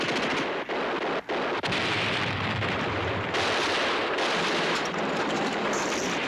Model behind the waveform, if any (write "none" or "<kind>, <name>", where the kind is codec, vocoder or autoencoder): none